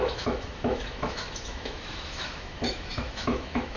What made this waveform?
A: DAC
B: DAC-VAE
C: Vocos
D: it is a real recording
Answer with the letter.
B